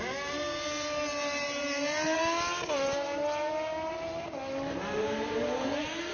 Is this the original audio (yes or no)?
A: no